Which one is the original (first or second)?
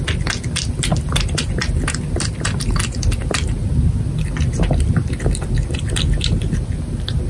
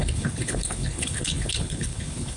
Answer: first